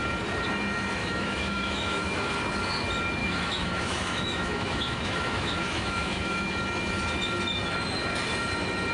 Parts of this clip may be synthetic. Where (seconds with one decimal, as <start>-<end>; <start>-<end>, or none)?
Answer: 1.0-2.3; 3.2-6.5